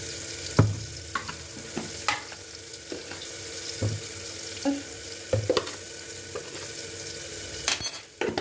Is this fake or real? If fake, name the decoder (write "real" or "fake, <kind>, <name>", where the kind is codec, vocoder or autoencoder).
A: real